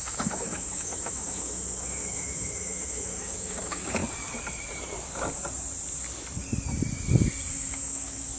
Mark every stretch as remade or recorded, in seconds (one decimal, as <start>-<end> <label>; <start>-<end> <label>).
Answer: 0.0-4.0 remade; 4.0-7.5 recorded; 7.5-8.4 remade